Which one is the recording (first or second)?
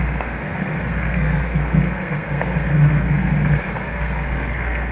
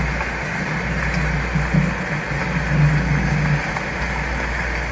second